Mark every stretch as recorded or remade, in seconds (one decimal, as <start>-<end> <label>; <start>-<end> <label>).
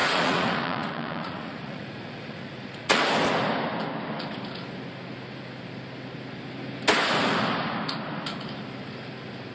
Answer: 0.0-3.0 remade; 3.0-9.5 recorded